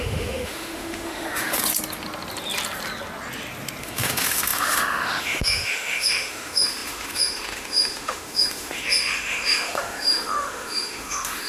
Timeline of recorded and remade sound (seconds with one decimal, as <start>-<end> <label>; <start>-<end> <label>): 0.0-1.6 remade; 1.6-3.8 recorded; 3.8-11.5 remade